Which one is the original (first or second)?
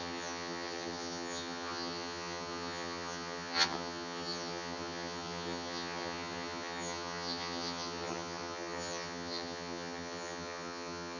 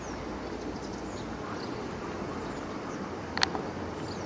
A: second